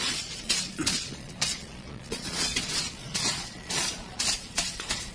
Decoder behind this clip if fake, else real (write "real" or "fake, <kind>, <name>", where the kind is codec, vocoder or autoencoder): fake, vocoder, Vocos